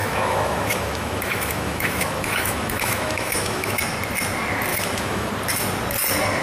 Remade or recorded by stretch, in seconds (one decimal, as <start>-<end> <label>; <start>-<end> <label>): 0.0-3.8 remade; 3.8-4.7 recorded; 4.7-5.3 remade; 5.3-6.4 recorded